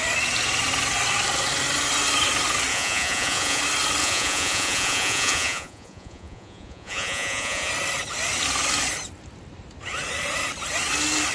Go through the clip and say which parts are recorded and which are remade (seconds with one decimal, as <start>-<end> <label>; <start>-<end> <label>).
0.0-2.7 recorded; 2.7-3.6 remade; 3.6-4.0 recorded; 4.0-7.7 remade; 7.7-11.3 recorded